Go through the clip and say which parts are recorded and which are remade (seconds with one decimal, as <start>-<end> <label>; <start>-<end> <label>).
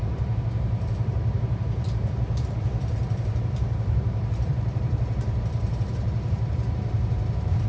0.0-7.7 remade